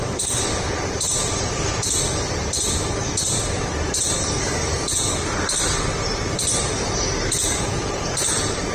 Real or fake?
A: fake